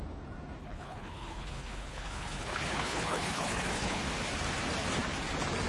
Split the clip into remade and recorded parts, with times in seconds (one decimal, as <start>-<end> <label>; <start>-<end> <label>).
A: 0.0-0.6 recorded; 0.6-4.0 remade; 4.0-5.7 recorded